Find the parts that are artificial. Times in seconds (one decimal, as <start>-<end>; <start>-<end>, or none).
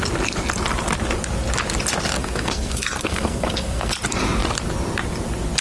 2.2-3.9